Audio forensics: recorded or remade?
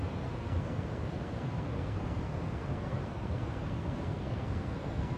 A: remade